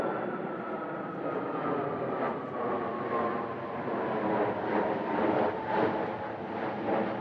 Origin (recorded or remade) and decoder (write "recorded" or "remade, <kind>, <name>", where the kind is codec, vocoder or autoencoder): recorded